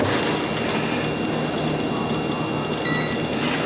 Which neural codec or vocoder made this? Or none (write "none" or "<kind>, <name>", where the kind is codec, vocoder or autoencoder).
none